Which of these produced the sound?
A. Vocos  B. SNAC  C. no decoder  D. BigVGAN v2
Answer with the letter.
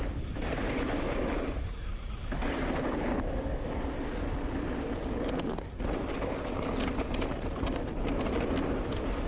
C